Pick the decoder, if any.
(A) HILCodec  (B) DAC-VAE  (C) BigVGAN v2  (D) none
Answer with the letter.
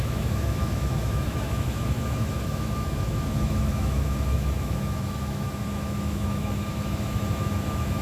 B